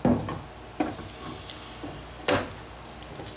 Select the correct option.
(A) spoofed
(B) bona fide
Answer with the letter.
B